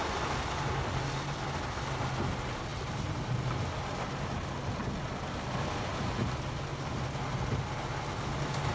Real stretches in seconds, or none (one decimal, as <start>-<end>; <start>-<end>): 0.0-2.7; 4.7-8.7